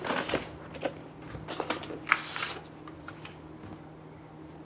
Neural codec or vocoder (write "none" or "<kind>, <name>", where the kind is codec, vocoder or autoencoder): none